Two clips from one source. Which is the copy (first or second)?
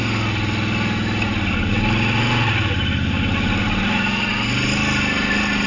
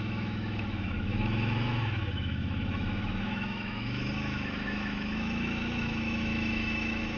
second